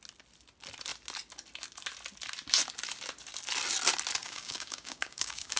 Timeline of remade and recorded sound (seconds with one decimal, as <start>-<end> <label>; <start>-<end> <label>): 0.0-4.2 recorded; 4.2-5.6 remade